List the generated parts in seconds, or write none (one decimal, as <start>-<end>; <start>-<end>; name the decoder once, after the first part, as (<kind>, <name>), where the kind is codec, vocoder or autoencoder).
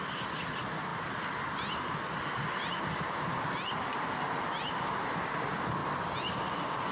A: none